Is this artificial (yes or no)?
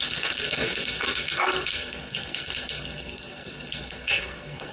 yes